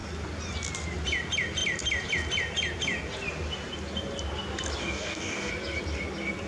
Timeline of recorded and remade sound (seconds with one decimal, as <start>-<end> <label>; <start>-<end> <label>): 0.0-4.8 recorded; 4.8-5.5 remade; 5.5-6.5 recorded